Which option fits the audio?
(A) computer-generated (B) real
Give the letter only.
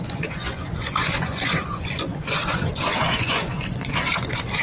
A